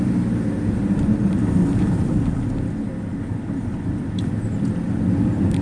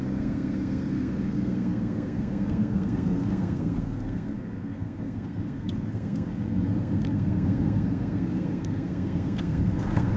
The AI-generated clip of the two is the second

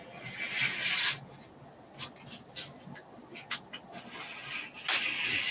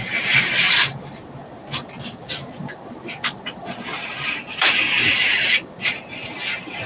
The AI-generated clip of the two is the second